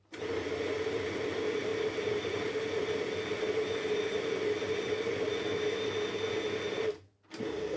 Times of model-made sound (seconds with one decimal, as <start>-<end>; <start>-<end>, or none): none